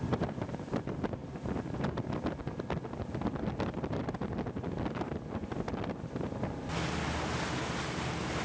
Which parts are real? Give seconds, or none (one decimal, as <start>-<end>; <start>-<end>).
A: 0.0-8.4